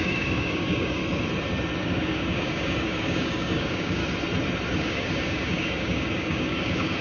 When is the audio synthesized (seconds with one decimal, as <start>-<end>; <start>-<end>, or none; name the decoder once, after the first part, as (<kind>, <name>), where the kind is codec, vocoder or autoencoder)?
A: 0.0-1.0 (codec, DAC); 1.8-4.0; 4.8-7.0